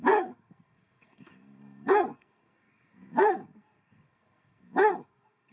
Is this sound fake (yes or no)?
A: yes